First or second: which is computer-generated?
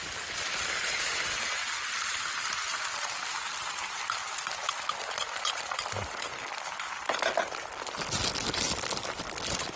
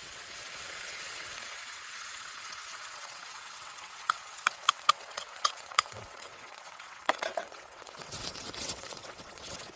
second